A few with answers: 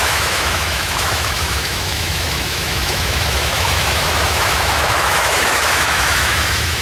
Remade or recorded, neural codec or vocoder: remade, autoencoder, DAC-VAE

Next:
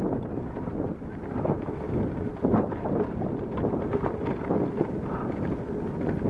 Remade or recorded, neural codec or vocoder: recorded